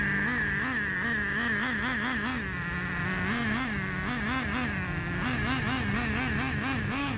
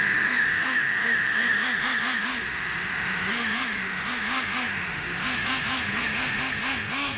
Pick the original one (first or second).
first